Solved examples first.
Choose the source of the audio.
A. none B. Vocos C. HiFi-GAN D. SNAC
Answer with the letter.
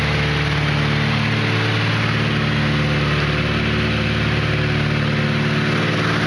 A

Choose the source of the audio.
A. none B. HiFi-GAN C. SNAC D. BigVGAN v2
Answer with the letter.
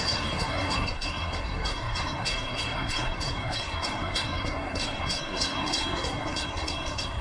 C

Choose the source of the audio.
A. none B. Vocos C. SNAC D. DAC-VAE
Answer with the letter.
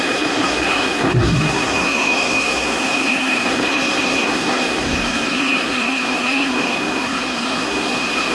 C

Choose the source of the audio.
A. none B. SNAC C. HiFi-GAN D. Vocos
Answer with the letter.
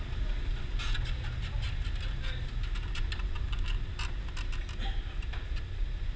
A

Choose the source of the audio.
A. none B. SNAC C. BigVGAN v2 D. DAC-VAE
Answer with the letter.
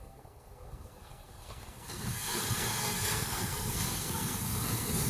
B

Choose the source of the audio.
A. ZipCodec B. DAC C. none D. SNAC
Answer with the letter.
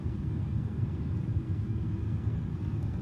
D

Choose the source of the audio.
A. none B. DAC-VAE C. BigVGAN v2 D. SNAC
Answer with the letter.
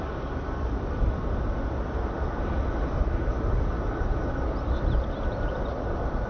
A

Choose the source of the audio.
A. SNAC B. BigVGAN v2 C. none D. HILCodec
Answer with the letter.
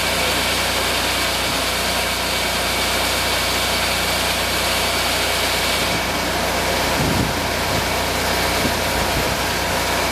C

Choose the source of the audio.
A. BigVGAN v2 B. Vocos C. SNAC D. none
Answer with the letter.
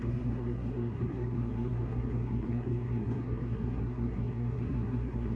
C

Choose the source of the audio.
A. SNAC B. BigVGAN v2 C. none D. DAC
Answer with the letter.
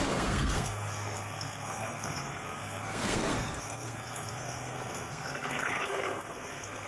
A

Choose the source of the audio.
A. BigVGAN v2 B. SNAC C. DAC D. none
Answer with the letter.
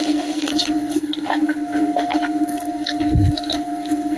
B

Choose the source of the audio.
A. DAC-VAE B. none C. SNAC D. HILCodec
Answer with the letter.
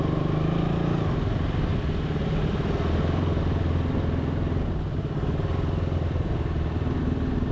B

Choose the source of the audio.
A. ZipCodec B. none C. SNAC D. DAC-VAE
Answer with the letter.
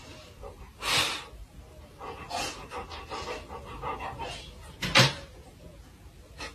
B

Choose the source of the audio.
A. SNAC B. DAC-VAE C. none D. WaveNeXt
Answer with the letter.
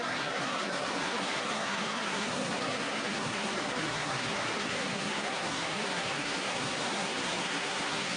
A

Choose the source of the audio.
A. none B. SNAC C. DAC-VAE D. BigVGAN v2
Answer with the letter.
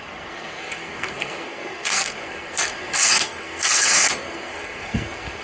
B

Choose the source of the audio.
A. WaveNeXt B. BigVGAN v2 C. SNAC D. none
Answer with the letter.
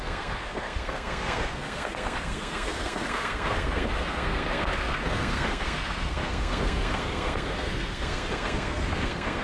C